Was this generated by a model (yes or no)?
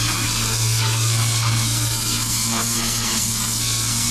yes